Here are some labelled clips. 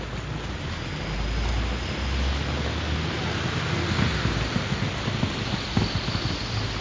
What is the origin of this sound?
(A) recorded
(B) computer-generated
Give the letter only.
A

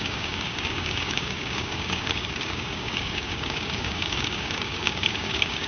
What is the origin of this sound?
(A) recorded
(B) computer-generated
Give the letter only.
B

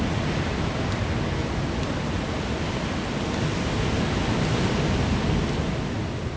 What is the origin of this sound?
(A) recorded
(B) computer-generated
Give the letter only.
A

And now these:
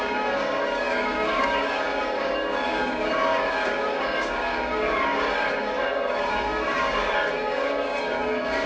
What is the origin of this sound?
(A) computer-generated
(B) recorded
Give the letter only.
A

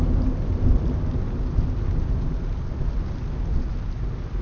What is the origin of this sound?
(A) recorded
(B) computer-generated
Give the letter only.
A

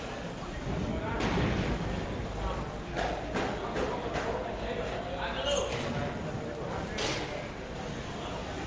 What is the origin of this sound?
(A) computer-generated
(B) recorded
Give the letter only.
B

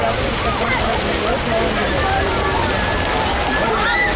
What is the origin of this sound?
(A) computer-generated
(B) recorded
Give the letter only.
B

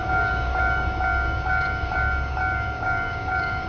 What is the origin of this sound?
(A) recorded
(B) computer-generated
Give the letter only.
B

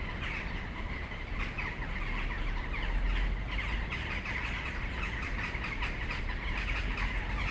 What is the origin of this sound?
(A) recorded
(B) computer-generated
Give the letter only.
A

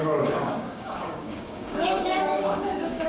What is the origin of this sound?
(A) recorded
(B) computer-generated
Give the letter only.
B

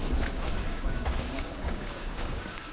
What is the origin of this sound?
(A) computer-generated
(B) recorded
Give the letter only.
A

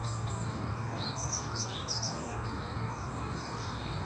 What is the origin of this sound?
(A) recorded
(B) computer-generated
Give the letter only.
B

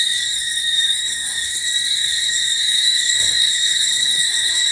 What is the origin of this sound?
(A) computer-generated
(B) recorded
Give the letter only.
A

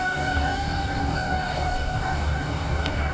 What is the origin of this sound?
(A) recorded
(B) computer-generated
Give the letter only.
B